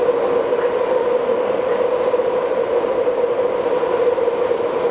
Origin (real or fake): real